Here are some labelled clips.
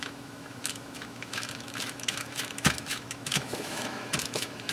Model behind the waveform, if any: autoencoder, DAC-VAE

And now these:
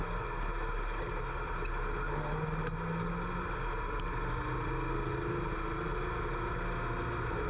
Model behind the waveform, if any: none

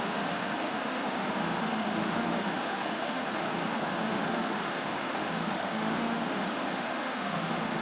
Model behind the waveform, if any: autoencoder, DAC-VAE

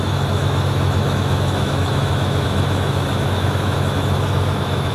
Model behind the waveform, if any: autoencoder, DAC-VAE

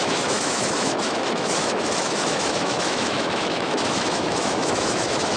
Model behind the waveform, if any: autoencoder, DAC-VAE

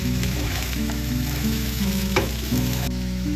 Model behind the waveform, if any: autoencoder, DAC-VAE